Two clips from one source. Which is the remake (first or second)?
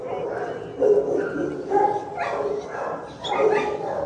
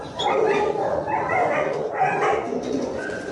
second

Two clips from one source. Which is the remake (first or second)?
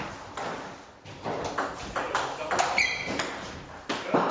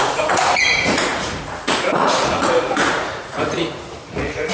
second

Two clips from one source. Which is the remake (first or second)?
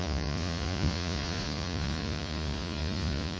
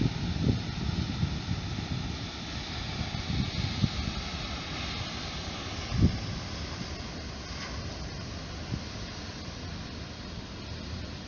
first